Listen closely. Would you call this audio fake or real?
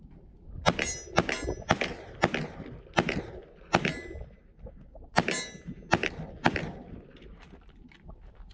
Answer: real